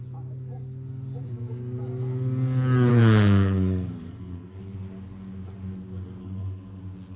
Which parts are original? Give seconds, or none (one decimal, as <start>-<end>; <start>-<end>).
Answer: 0.0-2.9; 4.6-6.2; 6.8-7.2